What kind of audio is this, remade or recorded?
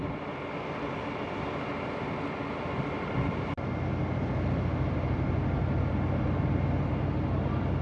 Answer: recorded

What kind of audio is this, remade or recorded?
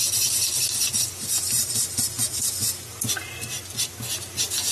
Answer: recorded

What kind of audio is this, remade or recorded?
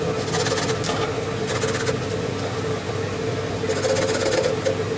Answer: recorded